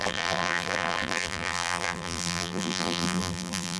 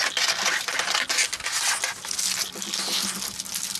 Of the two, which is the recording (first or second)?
second